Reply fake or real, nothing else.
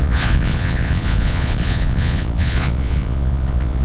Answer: fake